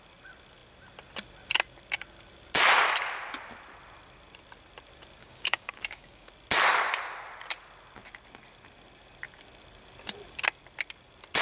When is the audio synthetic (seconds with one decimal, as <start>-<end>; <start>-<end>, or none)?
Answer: 5.2-6.3